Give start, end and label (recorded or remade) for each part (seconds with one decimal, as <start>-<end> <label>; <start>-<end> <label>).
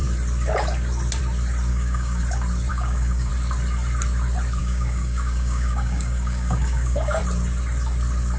0.0-1.7 recorded; 1.7-2.2 remade; 2.2-2.7 recorded; 2.7-3.3 remade; 3.3-4.6 recorded; 4.6-7.2 remade; 7.2-8.4 recorded